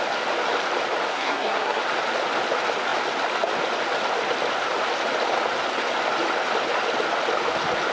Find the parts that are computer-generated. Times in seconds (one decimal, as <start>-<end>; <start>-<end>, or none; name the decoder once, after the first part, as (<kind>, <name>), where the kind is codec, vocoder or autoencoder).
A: 1.1-1.8 (codec, SNAC)